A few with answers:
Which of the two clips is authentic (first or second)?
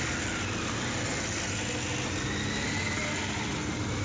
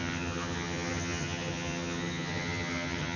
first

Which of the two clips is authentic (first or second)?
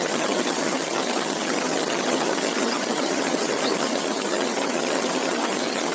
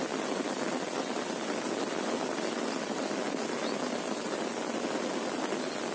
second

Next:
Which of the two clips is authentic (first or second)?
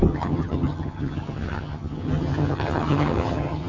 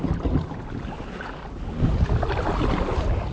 second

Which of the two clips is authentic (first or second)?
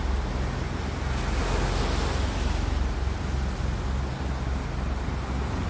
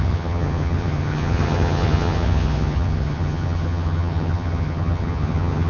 first